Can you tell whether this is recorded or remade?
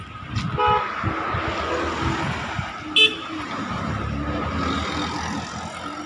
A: recorded